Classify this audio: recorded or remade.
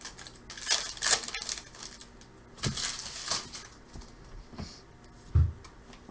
recorded